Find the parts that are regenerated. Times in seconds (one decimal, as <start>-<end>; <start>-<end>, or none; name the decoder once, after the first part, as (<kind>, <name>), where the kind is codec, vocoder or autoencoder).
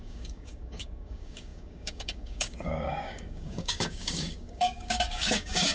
0.0-5.7 (codec, DAC)